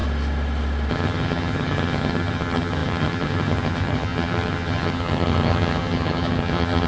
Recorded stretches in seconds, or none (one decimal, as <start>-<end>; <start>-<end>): 0.0-0.9